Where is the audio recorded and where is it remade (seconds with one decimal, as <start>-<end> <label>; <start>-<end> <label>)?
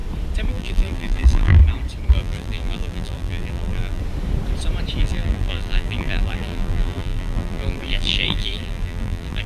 0.0-0.5 recorded; 0.5-1.6 remade; 1.6-2.1 recorded; 2.1-4.0 remade; 4.0-5.0 recorded; 5.0-9.5 remade